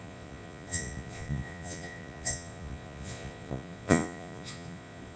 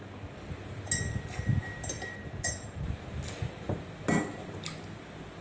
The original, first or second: second